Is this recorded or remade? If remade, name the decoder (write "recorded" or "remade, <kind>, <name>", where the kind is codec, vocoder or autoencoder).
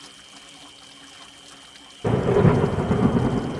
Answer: recorded